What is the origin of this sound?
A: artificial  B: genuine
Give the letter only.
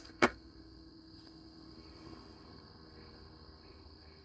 A